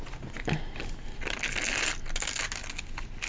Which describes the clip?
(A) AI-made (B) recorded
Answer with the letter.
B